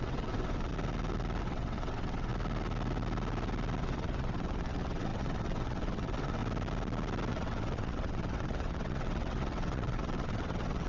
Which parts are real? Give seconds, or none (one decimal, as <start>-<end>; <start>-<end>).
0.7-1.4; 2.3-3.8; 6.4-7.3